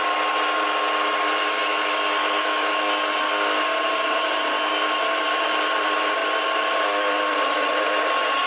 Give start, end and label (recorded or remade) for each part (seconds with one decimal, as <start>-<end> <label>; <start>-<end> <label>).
0.0-2.2 recorded; 2.2-2.8 remade; 2.8-8.5 recorded